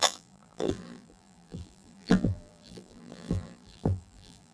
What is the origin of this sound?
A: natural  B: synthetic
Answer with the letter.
B